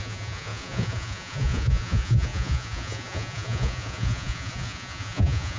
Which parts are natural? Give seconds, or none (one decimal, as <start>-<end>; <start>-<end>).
none